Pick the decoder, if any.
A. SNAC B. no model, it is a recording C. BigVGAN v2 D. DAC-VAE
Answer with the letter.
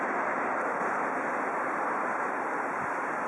C